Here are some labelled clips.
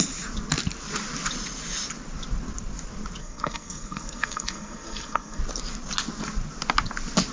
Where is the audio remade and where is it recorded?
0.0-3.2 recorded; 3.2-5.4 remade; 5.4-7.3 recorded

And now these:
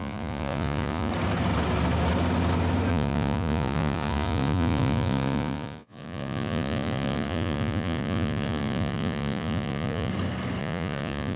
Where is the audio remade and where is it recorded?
0.0-1.1 remade; 1.1-2.9 recorded; 2.9-10.1 remade; 10.1-10.6 recorded; 10.6-11.4 remade

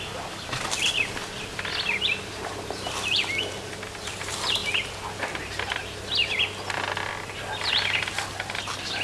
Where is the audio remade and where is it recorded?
0.0-1.2 recorded; 1.2-1.7 remade; 1.7-9.0 recorded

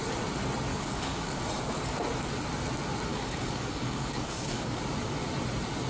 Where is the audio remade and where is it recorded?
0.0-0.7 recorded; 0.7-1.4 remade; 1.4-3.1 recorded; 3.1-4.8 remade; 4.8-5.9 recorded